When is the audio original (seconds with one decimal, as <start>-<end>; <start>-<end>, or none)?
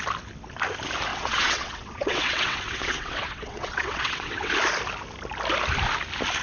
0.0-1.1; 4.5-6.4